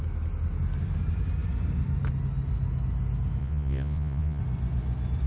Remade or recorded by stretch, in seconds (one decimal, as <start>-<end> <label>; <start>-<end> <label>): 0.0-3.4 recorded; 3.4-4.4 remade; 4.4-5.3 recorded